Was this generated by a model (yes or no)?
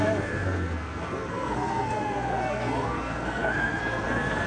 yes